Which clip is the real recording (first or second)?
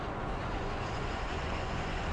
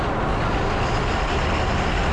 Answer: second